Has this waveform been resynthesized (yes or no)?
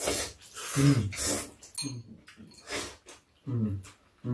no